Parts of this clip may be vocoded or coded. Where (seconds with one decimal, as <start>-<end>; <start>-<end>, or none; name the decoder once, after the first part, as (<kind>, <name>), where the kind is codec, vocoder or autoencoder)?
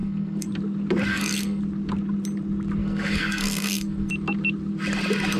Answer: 0.0-0.5 (codec, SNAC); 1.1-1.6; 2.8-4.1